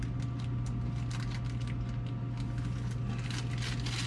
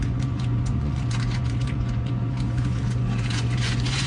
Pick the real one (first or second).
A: first